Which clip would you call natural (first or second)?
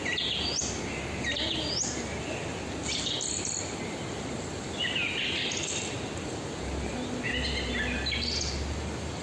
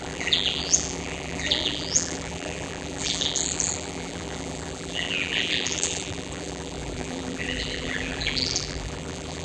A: first